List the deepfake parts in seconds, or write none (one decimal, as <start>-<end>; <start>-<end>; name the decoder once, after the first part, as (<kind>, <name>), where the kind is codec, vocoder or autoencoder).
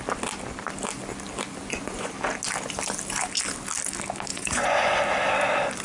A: 1.6-2.1 (vocoder, Vocos); 4.3-5.0